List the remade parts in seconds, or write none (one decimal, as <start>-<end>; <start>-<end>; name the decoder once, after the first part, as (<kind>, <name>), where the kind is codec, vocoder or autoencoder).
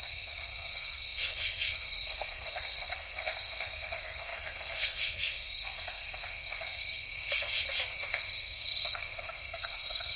0.0-7.5 (codec, SNAC); 8.0-10.2